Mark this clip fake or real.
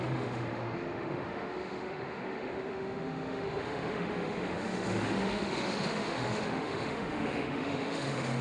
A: fake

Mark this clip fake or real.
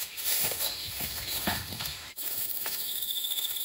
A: fake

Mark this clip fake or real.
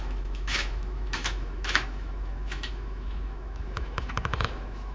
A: fake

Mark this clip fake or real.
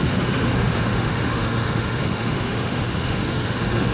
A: fake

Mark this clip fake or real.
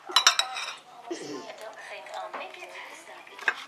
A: real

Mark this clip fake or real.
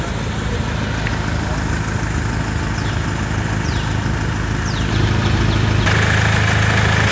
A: real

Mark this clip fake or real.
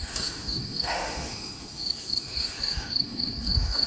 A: fake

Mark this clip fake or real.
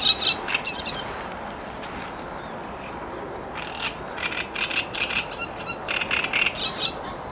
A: real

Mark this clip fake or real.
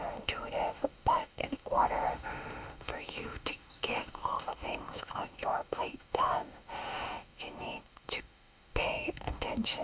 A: fake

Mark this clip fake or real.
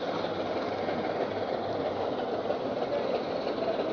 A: real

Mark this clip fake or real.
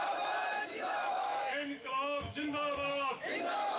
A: fake